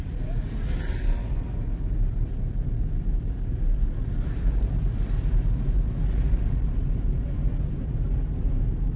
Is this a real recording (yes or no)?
yes